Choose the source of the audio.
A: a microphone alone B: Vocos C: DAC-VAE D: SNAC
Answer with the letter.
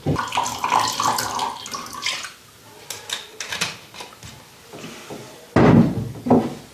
A